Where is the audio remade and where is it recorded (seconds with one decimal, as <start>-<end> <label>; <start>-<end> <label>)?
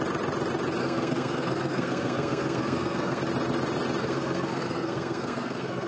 0.0-0.8 recorded; 0.8-3.2 remade; 3.2-4.0 recorded; 4.0-5.9 remade